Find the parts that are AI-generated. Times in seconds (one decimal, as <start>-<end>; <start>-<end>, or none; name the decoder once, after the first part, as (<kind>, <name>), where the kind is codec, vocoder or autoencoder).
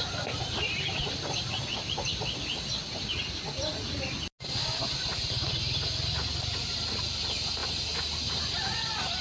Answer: none